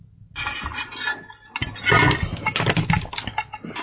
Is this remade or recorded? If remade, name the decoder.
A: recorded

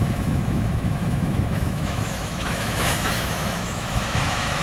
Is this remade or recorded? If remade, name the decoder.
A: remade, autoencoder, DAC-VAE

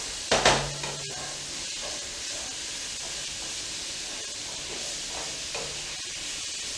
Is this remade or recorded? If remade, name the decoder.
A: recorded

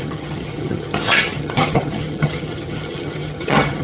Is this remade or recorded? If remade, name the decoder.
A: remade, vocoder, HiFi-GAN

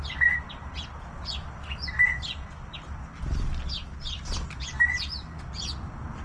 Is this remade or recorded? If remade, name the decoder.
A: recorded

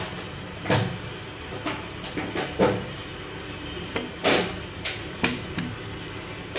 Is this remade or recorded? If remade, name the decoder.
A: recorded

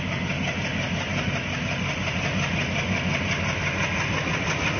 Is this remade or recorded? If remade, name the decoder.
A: recorded